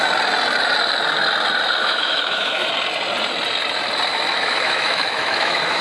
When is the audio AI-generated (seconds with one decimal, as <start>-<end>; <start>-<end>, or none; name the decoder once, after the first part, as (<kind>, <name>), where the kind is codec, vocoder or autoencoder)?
1.8-2.7 (autoencoder, DAC-VAE); 4.1-5.8